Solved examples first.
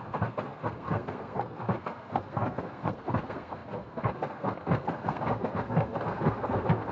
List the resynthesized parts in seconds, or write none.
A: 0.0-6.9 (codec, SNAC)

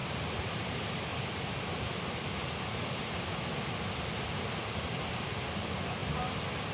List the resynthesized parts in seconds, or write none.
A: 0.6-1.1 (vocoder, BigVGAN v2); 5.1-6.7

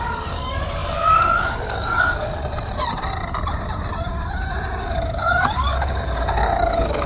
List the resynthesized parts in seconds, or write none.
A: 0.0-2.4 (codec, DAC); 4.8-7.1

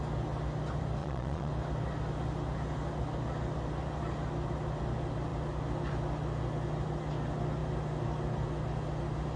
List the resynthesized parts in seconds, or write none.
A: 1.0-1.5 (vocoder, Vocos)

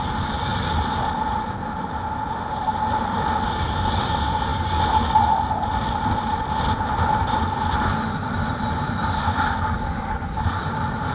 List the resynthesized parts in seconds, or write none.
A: none

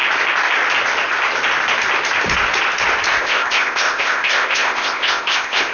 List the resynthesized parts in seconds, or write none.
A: 3.2-5.7 (codec, ZipCodec)